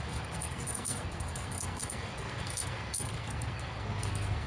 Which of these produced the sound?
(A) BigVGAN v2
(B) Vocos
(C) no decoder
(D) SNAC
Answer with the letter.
D